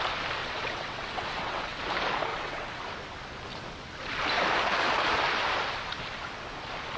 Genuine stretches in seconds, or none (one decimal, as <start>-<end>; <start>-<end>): 0.0-0.4; 1.8-2.3; 2.8-7.0